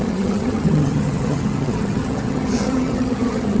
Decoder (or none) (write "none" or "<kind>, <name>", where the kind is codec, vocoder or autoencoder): vocoder, HiFi-GAN